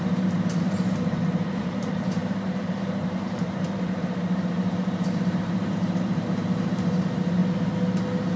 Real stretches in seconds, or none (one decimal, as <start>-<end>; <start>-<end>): 7.4-8.4